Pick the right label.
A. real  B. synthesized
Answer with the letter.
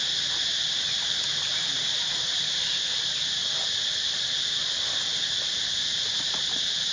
A